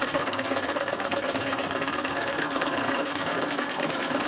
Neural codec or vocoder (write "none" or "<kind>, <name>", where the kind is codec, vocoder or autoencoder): codec, SNAC